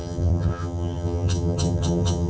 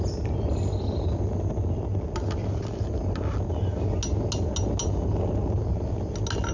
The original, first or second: second